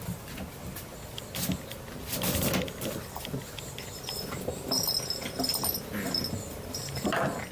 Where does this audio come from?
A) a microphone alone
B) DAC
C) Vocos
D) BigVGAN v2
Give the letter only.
A